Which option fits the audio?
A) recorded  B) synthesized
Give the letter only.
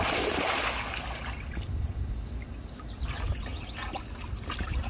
A